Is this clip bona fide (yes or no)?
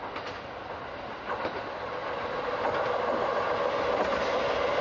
yes